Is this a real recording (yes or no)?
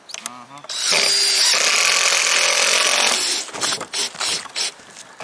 yes